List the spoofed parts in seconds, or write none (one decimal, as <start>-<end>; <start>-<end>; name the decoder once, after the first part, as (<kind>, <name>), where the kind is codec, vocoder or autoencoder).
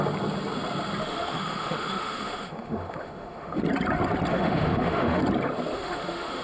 1.0-3.6 (autoencoder, DAC-VAE); 4.3-5.2; 5.7-6.4